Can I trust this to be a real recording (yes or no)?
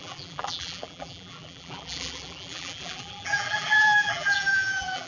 no